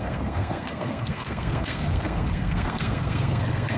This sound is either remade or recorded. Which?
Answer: remade